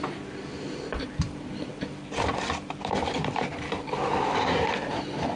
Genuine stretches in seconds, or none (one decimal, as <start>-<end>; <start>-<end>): none

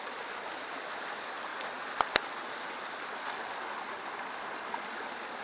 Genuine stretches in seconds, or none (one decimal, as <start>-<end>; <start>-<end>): 0.0-5.4